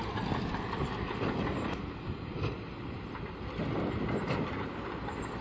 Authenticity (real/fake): fake